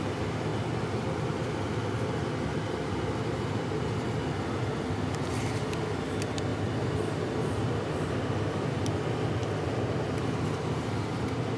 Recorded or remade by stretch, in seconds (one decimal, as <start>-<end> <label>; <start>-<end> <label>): 0.0-11.6 recorded